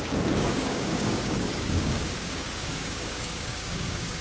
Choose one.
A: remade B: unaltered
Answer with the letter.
A